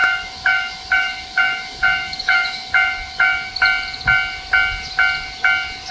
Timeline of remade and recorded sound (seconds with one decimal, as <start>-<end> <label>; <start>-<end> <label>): 0.0-3.5 remade; 3.5-5.9 recorded